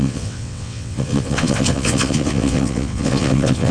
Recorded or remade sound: remade